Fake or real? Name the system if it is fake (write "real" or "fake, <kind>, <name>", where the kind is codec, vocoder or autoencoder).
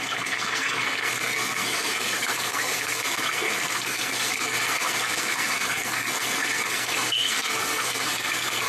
fake, codec, SNAC